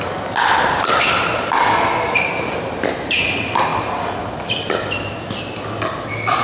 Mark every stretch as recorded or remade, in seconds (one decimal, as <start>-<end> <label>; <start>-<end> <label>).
0.0-6.4 recorded